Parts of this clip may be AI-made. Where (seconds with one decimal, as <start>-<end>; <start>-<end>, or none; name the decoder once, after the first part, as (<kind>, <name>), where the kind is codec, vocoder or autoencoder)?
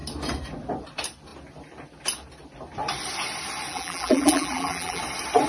3.7-5.0 (vocoder, BigVGAN v2)